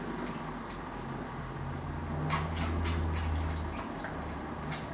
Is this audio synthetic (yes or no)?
no